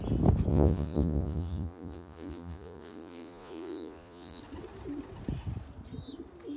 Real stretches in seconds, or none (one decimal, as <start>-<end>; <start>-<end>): 0.0-0.5; 4.4-6.6